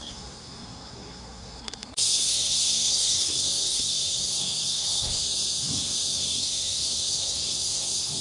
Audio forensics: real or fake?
fake